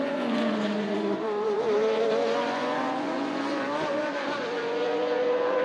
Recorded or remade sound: remade